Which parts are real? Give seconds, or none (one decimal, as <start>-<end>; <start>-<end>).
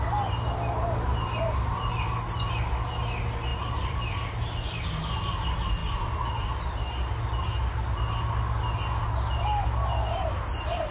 0.0-3.5; 4.0-10.9